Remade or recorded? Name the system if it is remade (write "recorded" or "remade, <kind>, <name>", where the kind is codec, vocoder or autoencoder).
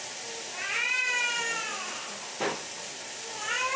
recorded